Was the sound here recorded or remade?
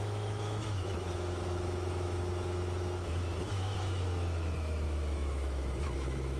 remade